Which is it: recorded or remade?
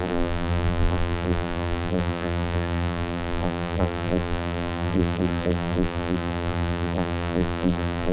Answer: remade